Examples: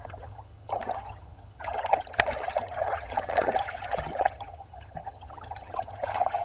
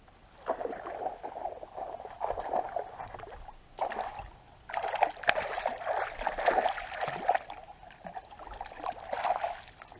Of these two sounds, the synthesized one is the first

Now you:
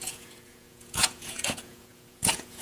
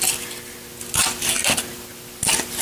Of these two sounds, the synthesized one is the first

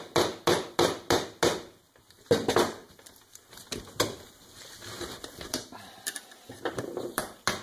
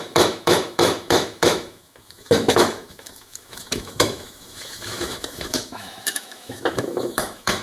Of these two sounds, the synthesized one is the second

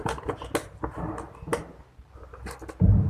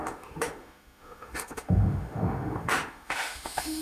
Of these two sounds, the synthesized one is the second